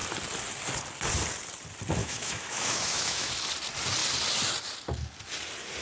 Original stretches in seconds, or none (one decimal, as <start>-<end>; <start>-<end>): 0.0-2.0; 3.3-5.8